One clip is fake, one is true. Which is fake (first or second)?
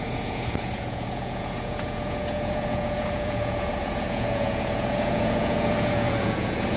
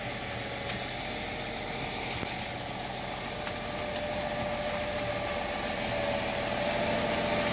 first